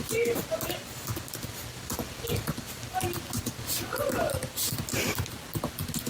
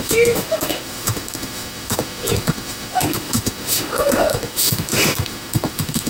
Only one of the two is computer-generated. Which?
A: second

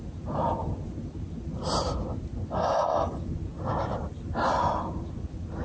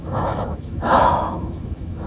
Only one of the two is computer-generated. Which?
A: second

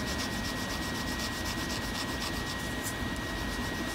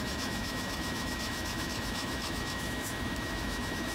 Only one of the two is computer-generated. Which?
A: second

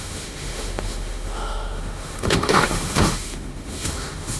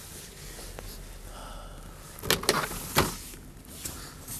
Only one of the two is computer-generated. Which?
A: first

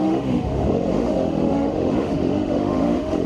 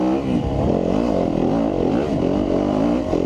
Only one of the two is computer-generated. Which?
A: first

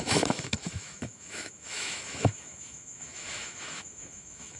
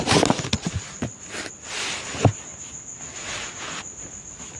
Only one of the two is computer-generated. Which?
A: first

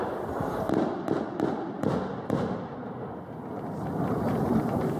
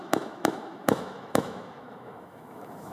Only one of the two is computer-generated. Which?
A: second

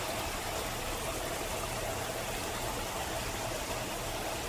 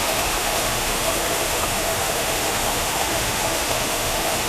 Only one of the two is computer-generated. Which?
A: second